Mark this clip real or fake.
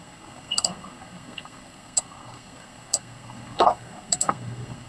fake